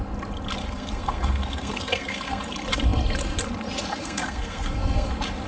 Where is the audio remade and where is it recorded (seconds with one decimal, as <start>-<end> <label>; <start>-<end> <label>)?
0.0-0.6 recorded; 0.6-2.4 remade; 2.4-3.9 recorded; 3.9-5.1 remade; 5.1-5.5 recorded